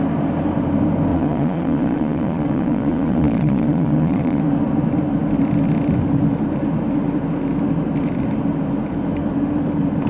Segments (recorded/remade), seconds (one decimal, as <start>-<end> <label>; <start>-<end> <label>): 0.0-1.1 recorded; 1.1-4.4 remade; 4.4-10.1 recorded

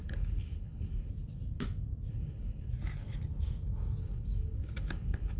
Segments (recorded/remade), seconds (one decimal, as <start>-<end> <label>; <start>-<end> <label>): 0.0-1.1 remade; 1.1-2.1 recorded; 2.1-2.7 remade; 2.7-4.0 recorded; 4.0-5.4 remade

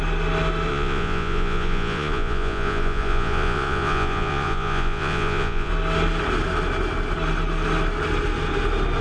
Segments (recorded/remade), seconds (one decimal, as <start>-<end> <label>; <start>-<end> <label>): 0.0-0.7 recorded; 0.7-5.7 remade; 5.7-9.0 recorded